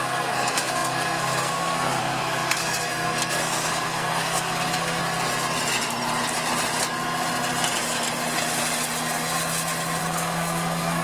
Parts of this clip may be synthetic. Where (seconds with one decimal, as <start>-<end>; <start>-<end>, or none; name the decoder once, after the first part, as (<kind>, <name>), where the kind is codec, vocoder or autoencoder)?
0.0-5.0 (codec, SNAC); 10.0-11.0